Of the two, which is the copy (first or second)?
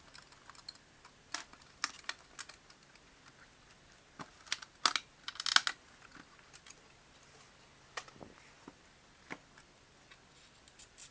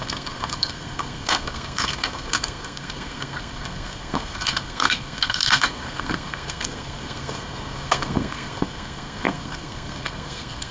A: second